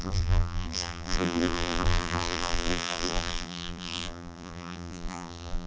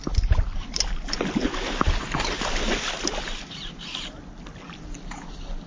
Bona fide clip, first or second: second